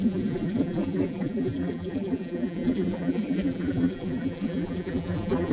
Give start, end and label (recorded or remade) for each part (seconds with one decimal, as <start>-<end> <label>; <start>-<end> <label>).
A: 0.0-5.5 remade